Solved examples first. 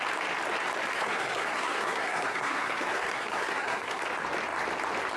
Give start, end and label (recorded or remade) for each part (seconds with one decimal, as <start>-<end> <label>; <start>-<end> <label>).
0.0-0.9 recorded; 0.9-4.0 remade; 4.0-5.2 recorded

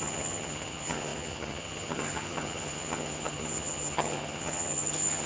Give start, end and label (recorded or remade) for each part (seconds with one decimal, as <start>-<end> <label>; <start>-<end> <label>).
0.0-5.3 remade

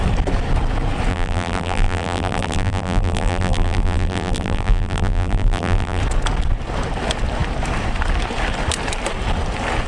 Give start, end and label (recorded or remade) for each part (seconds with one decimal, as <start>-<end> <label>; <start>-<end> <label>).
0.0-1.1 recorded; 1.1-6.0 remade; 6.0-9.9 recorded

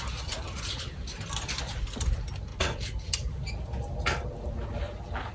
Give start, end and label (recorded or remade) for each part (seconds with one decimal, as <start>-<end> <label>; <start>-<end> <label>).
0.0-5.3 recorded